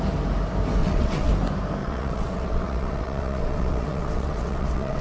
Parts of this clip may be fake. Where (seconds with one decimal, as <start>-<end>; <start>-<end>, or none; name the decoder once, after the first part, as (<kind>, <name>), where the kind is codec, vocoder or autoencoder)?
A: 0.8-1.3 (vocoder, WaveNeXt); 1.8-5.0